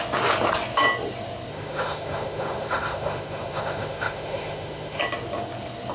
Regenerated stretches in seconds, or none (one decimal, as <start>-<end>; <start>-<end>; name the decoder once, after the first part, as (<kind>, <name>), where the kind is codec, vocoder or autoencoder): 1.5-5.0 (autoencoder, DAC-VAE)

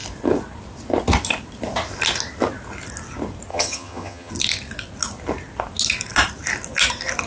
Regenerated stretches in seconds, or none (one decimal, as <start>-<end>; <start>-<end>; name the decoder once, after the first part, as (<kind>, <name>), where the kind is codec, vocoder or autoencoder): 3.5-4.3 (vocoder, HiFi-GAN)

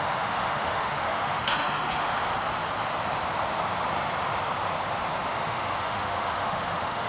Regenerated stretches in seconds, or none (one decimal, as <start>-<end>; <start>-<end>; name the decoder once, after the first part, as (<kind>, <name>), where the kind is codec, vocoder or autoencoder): 0.0-2.1 (autoencoder, DAC-VAE); 5.3-7.1

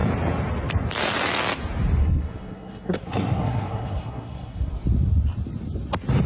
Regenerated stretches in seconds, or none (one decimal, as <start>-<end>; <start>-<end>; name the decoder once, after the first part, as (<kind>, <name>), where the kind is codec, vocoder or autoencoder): 2.0-4.7 (codec, SNAC)

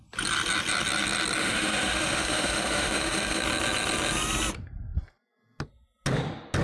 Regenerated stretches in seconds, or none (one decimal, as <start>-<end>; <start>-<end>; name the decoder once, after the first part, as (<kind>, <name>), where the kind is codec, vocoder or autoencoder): 1.4-3.4 (autoencoder, DAC-VAE)

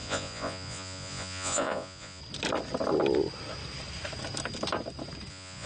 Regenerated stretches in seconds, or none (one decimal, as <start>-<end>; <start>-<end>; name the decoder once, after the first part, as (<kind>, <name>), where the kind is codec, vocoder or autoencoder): 0.0-2.2 (vocoder, Vocos); 5.3-5.7

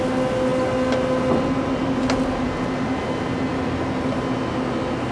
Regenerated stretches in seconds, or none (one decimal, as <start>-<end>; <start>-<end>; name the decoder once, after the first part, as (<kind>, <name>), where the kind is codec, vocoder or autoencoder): none